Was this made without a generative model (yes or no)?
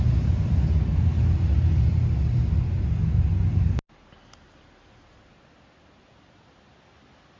yes